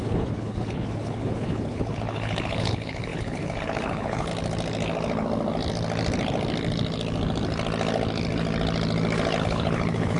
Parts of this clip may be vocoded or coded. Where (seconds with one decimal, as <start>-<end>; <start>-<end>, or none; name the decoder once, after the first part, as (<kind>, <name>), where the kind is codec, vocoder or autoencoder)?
0.0-4.3 (codec, HILCodec); 9.4-10.2